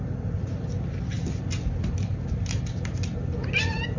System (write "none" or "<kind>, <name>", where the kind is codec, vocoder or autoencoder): none